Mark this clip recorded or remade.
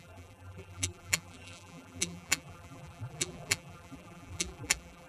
remade